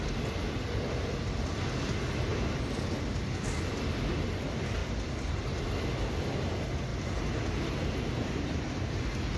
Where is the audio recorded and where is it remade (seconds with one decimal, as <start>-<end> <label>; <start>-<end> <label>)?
0.0-9.4 recorded